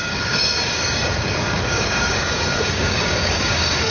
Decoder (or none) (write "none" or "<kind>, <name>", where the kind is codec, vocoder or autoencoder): codec, DAC